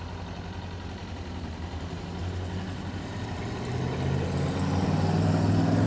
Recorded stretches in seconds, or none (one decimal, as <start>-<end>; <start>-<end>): 0.0-5.9